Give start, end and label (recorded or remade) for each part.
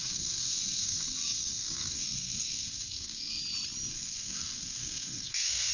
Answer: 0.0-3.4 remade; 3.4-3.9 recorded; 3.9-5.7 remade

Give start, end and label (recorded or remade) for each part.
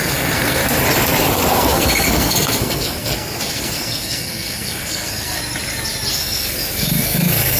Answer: 0.0-0.6 remade; 0.6-1.5 recorded; 1.5-5.4 remade; 5.4-6.1 recorded; 6.1-7.6 remade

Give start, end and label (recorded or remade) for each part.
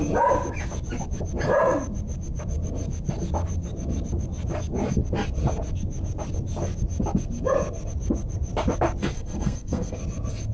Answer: 0.0-9.0 recorded; 9.0-10.0 remade; 10.0-10.5 recorded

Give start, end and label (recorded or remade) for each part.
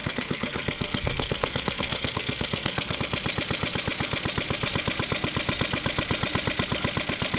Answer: 0.0-3.0 remade; 3.0-7.4 recorded